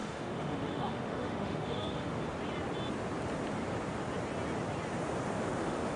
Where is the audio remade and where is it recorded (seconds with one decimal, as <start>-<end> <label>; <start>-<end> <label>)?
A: 0.0-2.2 remade; 2.2-5.6 recorded; 5.6-6.0 remade